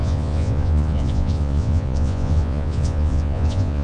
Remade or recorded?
remade